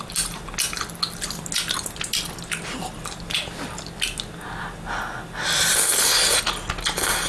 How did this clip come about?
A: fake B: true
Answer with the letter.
B